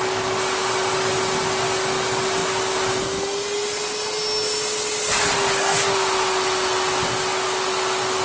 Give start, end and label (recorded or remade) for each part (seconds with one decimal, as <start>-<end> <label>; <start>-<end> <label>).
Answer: 0.0-8.2 recorded